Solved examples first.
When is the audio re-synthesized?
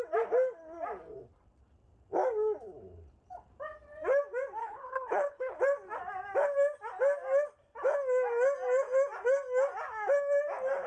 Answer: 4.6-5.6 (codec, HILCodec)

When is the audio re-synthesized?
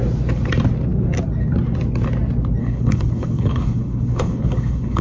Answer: 2.6-5.0 (codec, HILCodec)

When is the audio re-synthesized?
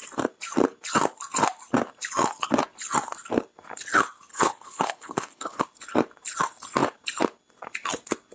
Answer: 4.3-5.6 (codec, HILCodec)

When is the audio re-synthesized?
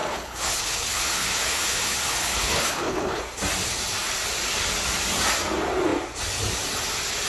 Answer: 0.0-3.2 (codec, HILCodec)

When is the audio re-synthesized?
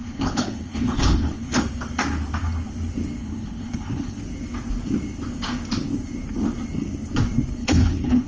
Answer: 0.0-1.6 (codec, HILCodec); 3.2-4.2; 7.6-8.3